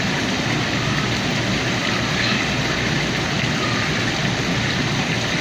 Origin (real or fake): real